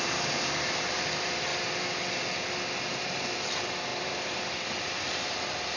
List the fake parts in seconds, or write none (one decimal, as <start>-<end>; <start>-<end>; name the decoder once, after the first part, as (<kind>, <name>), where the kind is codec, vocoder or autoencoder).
0.0-1.5 (vocoder, BigVGAN v2); 2.9-5.8